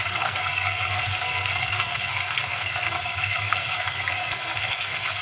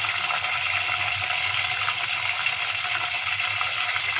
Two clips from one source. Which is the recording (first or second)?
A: second